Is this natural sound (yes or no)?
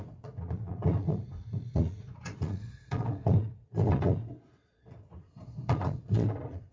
no